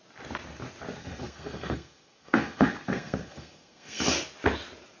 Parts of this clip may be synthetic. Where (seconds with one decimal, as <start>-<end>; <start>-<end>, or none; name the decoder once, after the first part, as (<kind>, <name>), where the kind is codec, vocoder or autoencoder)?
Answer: 1.0-4.0 (codec, SNAC)

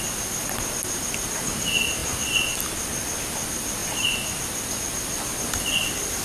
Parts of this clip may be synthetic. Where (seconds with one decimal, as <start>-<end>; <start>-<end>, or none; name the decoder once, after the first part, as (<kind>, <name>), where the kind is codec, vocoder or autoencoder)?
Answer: none

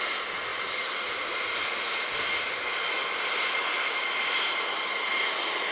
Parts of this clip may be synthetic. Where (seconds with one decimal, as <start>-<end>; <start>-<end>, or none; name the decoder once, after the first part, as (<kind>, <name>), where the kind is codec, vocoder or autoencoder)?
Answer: none

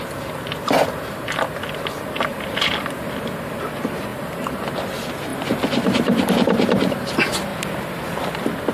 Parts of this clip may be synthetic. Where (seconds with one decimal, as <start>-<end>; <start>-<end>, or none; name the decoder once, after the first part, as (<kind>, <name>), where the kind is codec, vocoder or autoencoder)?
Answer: 2.3-2.8 (vocoder, BigVGAN v2); 4.1-4.7

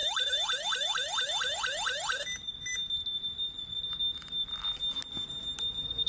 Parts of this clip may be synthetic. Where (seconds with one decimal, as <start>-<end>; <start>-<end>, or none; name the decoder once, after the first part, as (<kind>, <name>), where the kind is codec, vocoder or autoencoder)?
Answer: none